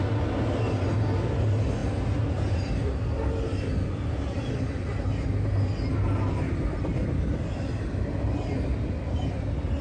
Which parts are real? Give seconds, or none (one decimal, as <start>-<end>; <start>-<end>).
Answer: 0.0-9.8